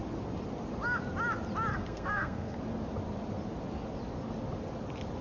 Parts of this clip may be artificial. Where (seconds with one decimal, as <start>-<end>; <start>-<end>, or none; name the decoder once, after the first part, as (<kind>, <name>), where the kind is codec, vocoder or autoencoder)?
1.7-2.6 (codec, SNAC)

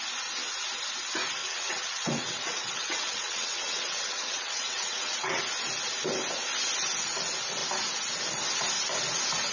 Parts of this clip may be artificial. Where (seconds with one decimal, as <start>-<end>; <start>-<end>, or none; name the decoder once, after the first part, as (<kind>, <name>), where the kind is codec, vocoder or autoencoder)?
1.4-5.4 (vocoder, WaveNeXt)

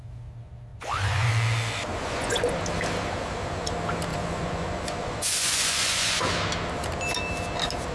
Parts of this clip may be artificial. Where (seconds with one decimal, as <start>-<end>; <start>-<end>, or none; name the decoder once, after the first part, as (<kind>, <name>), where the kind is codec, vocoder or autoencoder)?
0.7-1.3 (vocoder, Vocos); 1.9-2.6; 4.1-6.3

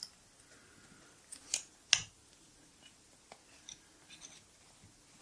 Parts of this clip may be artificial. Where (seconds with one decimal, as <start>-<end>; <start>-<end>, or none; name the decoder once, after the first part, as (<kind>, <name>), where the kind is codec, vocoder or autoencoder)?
none

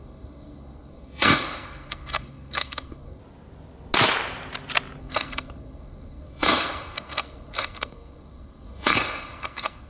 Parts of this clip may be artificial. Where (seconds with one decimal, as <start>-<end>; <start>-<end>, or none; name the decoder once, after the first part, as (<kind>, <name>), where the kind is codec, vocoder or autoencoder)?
0.0-3.2 (codec, SNAC); 5.0-9.9